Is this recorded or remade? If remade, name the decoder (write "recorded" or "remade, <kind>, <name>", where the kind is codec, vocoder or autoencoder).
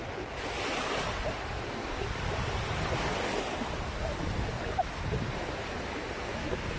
recorded